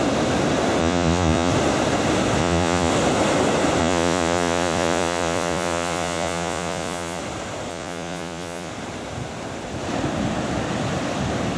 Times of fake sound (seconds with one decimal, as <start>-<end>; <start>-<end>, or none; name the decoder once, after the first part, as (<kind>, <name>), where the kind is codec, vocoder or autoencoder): 0.8-1.5 (vocoder, Vocos); 2.4-2.9; 3.8-7.2; 7.7-8.7